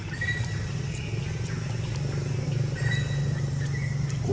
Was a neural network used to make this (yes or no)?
no